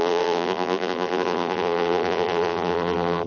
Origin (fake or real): fake